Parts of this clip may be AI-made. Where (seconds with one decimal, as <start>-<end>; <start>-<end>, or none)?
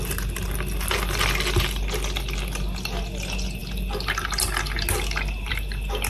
none